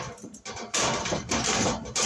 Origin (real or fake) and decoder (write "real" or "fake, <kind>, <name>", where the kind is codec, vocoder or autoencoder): fake, vocoder, BigVGAN v2